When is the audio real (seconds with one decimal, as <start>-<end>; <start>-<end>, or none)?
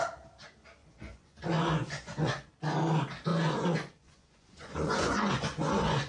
0.0-0.8; 2.5-3.3